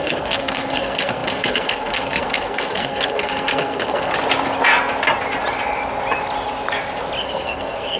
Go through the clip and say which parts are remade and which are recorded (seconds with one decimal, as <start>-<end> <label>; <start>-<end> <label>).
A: 0.0-4.1 remade; 4.1-7.2 recorded; 7.2-8.0 remade